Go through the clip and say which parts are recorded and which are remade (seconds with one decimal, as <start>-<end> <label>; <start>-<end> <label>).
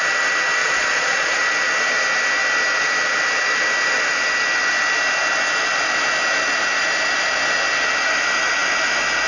0.0-0.6 recorded; 0.6-1.4 remade; 1.4-9.3 recorded